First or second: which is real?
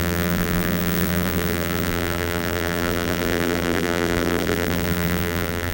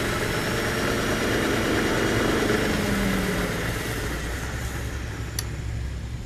second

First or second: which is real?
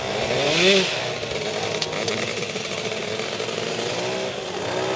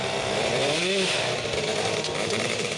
first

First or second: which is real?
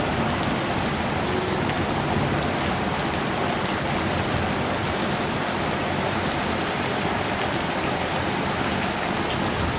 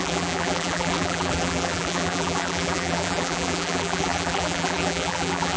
first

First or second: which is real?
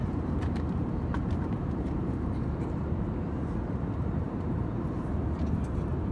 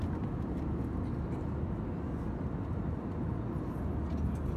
second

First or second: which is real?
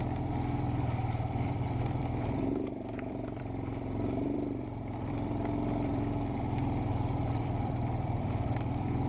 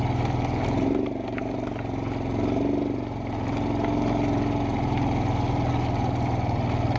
second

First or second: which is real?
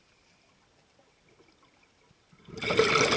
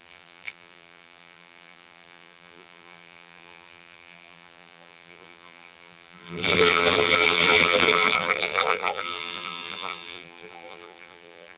first